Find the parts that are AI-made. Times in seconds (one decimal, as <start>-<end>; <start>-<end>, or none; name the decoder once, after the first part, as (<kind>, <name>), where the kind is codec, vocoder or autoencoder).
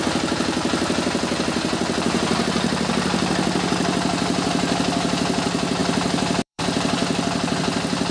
5.8-6.6 (vocoder, BigVGAN v2)